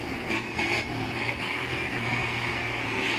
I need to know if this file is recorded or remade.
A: remade